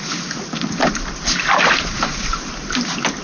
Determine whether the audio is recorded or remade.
recorded